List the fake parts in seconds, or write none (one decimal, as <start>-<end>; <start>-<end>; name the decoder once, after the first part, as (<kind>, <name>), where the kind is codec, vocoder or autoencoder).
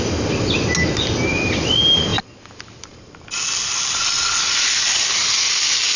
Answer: none